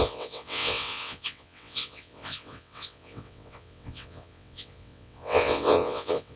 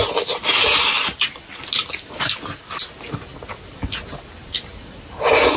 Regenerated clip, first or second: first